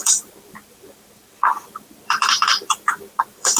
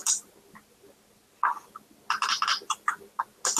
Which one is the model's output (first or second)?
first